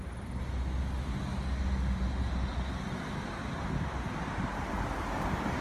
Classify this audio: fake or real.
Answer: real